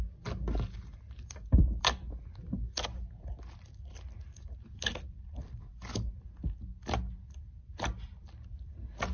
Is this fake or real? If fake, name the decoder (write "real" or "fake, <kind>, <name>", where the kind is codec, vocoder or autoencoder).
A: real